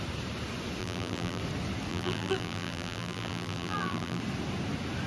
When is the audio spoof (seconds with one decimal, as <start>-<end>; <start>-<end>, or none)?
0.8-1.4; 1.9-4.2